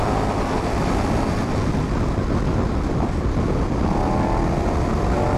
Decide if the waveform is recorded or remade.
recorded